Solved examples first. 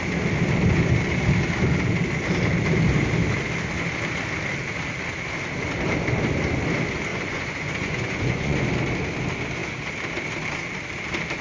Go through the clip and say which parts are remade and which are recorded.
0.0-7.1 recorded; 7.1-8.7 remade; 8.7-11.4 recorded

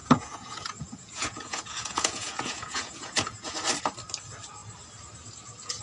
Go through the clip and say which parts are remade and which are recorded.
0.0-3.5 remade; 3.5-5.8 recorded

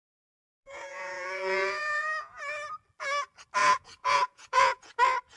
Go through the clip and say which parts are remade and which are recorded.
0.0-0.6 recorded; 0.6-2.4 remade; 2.4-3.6 recorded; 3.6-5.0 remade; 5.0-5.4 recorded

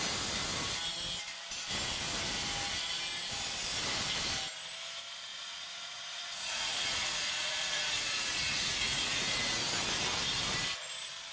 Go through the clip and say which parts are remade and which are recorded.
0.0-5.3 recorded; 5.3-9.6 remade; 9.6-11.3 recorded

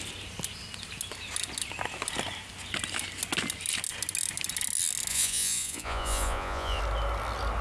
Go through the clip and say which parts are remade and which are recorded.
0.0-5.1 recorded; 5.1-6.8 remade; 6.8-7.6 recorded